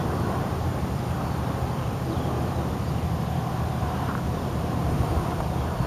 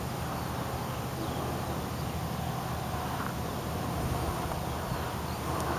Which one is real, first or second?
second